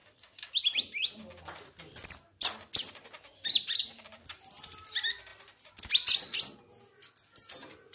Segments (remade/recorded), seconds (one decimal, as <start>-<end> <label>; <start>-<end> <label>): 0.0-7.9 recorded